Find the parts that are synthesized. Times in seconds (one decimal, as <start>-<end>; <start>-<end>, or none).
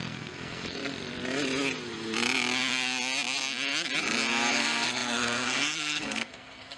0.0-0.8; 4.5-6.8